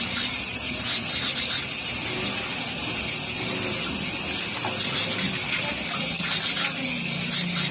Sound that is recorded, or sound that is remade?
recorded